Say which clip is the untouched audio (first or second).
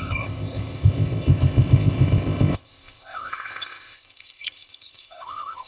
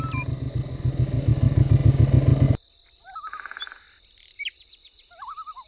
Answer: second